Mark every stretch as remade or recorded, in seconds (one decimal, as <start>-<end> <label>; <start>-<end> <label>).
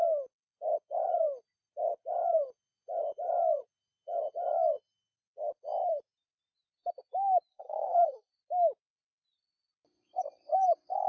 0.0-7.5 recorded; 7.5-8.3 remade; 8.3-11.1 recorded